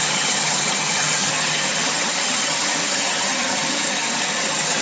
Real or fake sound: fake